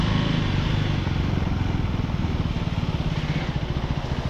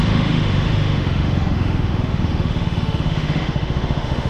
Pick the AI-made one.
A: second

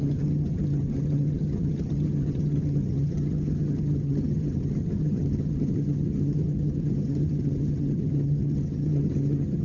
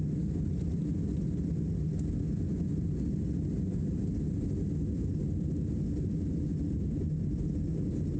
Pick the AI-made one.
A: first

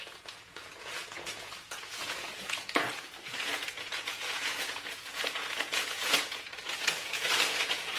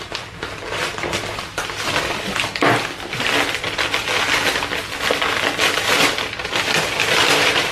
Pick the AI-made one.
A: first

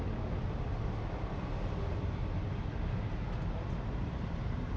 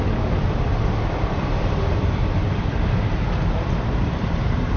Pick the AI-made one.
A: second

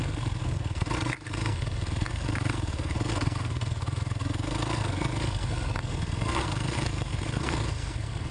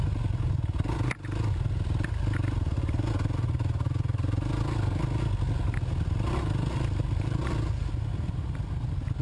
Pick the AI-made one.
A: first